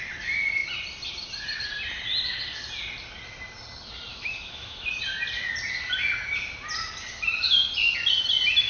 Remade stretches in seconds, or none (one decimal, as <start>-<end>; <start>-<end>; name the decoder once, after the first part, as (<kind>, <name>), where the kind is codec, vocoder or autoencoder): 4.1-4.9 (autoencoder, DAC-VAE)

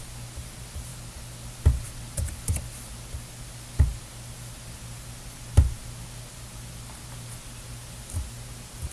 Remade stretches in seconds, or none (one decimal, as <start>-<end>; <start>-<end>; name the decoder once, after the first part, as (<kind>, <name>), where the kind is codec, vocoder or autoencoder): none